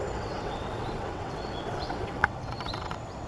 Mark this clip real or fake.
fake